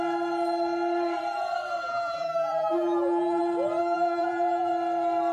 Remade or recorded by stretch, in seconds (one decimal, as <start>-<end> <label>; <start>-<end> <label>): 0.0-1.8 recorded; 1.8-3.4 remade; 3.4-3.8 recorded; 3.8-4.7 remade; 4.7-5.3 recorded